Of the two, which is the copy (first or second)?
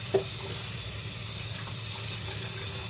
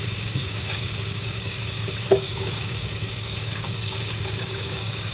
second